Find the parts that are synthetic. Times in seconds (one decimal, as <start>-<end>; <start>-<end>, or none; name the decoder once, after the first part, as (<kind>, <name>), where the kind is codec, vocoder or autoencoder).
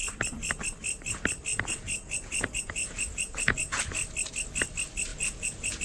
1.5-3.8 (vocoder, Vocos); 5.1-5.8